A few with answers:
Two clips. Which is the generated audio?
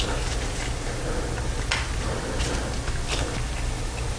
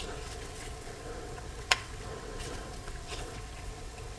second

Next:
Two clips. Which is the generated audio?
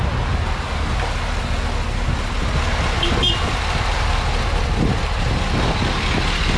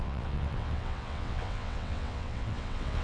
second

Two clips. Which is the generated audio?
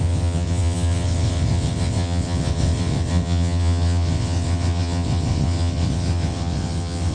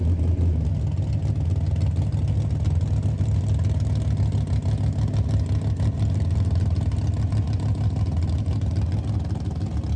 first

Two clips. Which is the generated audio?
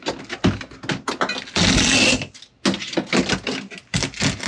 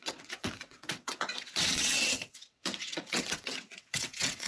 second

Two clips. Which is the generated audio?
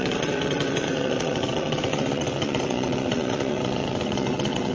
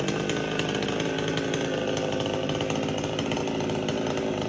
first